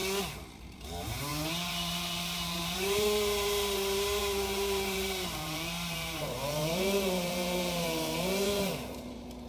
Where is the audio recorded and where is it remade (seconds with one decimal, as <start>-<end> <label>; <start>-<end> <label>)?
0.0-0.6 recorded; 0.6-9.5 remade